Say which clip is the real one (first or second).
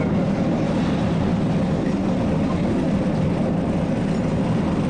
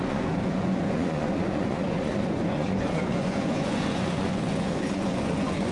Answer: first